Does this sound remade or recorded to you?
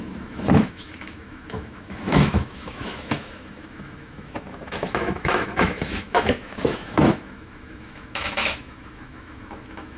remade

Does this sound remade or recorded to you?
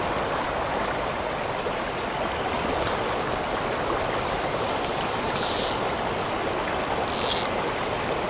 recorded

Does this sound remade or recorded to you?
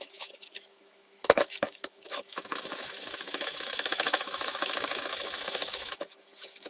remade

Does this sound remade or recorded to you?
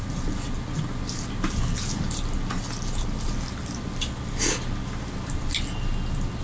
recorded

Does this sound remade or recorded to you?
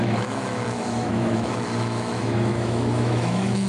remade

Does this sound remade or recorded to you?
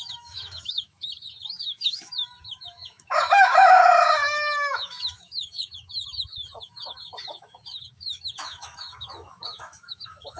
remade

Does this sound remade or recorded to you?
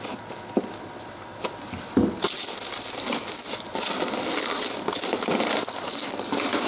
recorded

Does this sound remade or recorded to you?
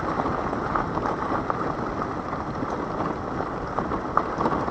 recorded